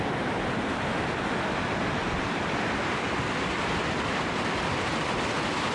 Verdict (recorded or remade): recorded